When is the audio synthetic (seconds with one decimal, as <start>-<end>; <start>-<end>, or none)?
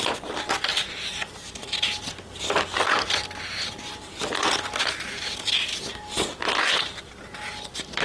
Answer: 0.7-2.2; 5.7-8.0